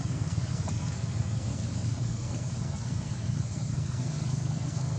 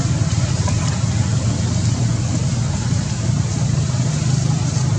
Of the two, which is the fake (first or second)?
first